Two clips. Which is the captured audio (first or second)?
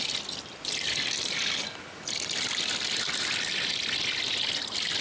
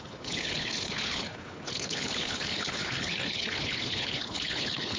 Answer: first